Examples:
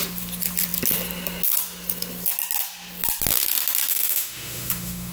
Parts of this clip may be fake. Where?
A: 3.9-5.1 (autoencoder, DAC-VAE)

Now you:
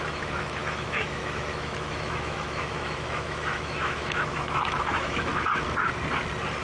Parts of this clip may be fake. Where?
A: 0.0-5.3 (autoencoder, DAC-VAE)

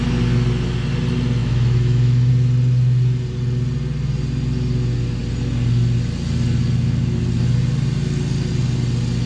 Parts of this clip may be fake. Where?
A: 1.4-2.3 (autoencoder, DAC-VAE)

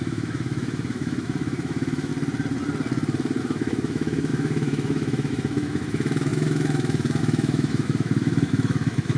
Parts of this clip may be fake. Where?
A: 0.0-2.1 (autoencoder, DAC-VAE); 3.4-9.2

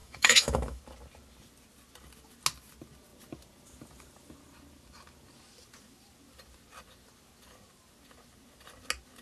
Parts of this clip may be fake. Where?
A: 0.0-0.8 (autoencoder, DAC-VAE)